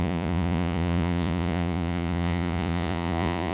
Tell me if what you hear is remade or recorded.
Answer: remade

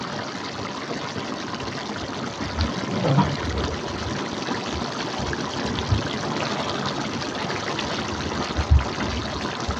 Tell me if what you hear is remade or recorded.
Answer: recorded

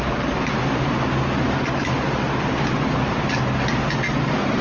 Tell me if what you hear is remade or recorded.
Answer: recorded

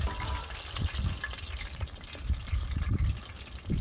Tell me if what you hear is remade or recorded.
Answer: recorded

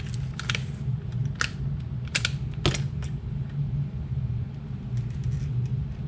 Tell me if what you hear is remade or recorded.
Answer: recorded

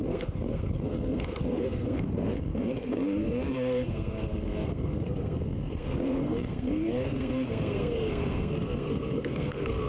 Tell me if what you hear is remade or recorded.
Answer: remade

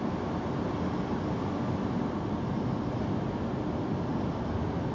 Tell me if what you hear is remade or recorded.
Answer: recorded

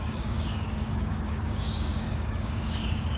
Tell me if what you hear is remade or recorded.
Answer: remade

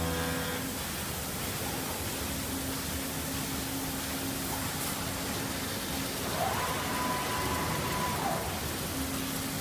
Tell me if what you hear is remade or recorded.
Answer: recorded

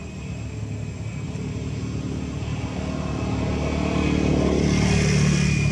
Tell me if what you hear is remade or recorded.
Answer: recorded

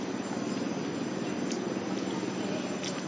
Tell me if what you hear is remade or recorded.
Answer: recorded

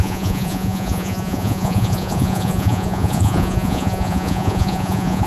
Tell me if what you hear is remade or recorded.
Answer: remade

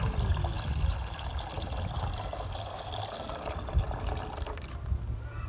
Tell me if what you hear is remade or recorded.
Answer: recorded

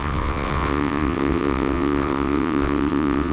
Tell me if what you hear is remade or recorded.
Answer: remade